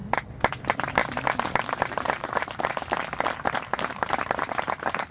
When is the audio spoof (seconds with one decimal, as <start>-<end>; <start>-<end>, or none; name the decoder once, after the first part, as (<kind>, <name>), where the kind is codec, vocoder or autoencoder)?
0.6-1.0 (vocoder, BigVGAN v2); 1.8-2.8; 3.6-5.1